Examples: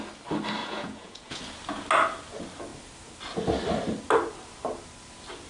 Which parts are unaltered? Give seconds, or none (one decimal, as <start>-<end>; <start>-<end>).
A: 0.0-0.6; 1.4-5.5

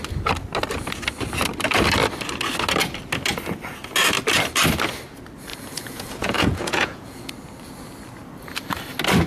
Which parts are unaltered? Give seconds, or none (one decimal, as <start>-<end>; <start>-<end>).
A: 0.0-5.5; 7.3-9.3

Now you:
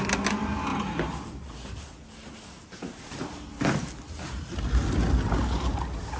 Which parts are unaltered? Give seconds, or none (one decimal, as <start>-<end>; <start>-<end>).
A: 0.0-6.2

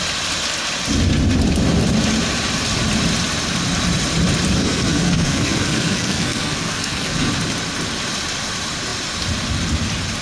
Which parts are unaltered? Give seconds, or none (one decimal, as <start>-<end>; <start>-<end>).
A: 0.0-4.6; 7.3-10.2